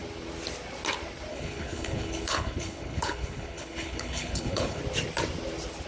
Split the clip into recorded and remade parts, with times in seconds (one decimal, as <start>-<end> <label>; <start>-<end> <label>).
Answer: 0.0-1.3 recorded; 1.3-4.8 remade; 4.8-5.9 recorded